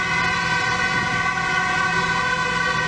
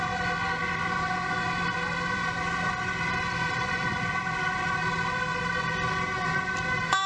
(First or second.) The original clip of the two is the first